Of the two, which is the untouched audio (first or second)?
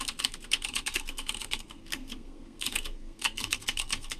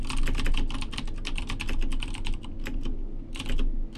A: second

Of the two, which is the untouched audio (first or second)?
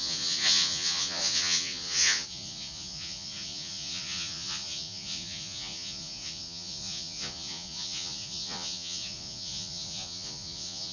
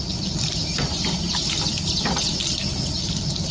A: second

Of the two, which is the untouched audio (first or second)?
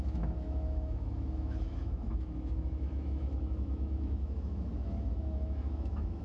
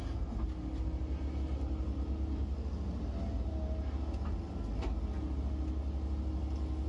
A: second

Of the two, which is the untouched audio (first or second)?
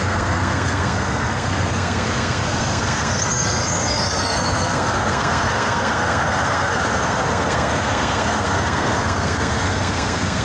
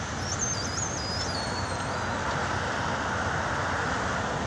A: second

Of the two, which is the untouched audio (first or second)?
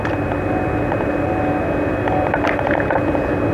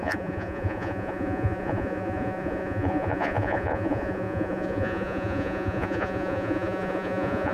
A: first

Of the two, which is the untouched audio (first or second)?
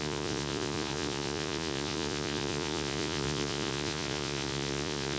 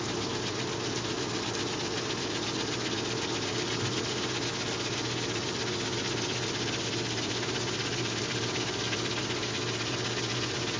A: second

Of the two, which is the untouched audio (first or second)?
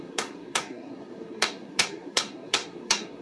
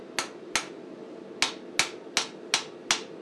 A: second